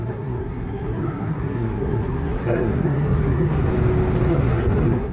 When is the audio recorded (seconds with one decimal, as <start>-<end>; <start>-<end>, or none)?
3.7-4.3